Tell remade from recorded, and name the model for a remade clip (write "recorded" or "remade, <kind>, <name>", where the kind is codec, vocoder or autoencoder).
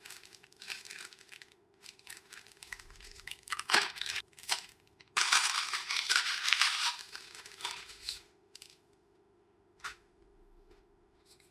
remade, autoencoder, DAC-VAE